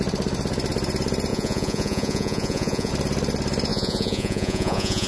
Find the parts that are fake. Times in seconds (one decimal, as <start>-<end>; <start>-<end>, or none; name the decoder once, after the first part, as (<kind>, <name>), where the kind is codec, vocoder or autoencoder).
1.3-2.9 (vocoder, Vocos); 3.7-5.1